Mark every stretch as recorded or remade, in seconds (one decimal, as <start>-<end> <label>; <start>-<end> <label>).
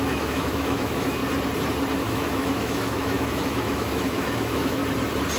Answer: 0.0-1.2 remade; 1.2-2.0 recorded; 2.0-4.8 remade; 4.8-5.4 recorded